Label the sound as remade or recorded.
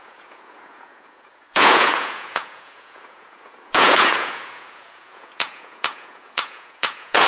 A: remade